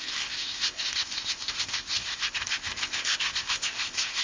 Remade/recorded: remade